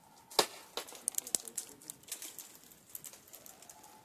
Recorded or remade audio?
recorded